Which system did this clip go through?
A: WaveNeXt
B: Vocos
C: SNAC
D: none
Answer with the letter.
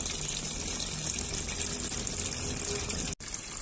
D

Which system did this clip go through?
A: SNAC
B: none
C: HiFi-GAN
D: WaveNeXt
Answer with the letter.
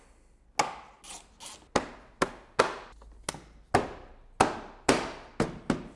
B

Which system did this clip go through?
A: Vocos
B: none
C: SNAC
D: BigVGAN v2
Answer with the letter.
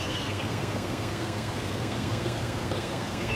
C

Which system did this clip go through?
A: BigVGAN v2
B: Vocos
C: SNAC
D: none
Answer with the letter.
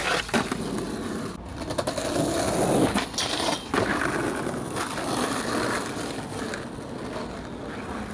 D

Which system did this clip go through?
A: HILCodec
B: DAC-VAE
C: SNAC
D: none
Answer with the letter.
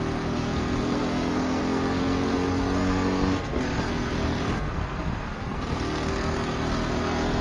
C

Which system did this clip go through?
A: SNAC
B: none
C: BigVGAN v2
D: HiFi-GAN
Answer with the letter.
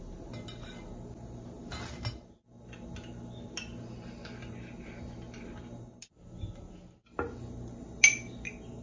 B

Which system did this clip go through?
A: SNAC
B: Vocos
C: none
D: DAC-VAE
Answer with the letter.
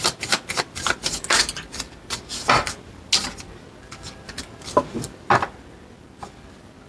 C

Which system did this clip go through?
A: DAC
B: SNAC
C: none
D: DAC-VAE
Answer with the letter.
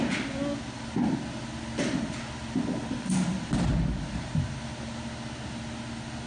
C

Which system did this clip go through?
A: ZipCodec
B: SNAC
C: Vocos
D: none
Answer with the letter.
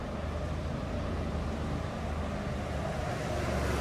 D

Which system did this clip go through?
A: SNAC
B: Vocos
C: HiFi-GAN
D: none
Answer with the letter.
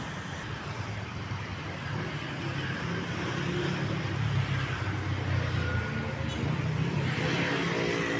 D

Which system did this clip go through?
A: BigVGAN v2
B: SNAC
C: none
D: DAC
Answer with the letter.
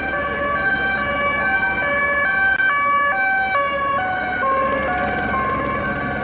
C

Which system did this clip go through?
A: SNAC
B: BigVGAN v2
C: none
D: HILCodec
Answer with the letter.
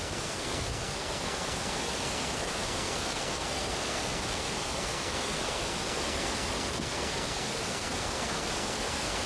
A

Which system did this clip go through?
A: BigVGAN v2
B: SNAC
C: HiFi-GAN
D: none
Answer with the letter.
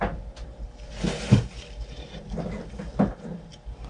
D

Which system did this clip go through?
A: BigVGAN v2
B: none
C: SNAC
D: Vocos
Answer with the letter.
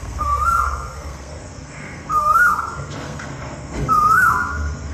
C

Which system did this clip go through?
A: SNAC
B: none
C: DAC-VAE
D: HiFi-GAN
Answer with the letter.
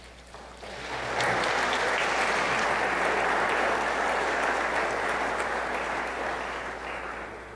B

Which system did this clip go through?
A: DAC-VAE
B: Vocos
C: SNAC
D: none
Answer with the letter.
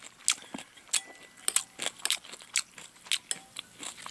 D